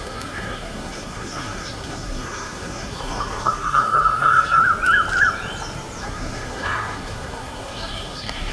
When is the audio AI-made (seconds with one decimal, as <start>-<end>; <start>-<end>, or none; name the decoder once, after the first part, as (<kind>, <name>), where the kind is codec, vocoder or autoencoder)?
0.0-4.6 (codec, SNAC); 6.0-8.5